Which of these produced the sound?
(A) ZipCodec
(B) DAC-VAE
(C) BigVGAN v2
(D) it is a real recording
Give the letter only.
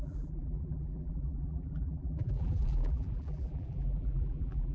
C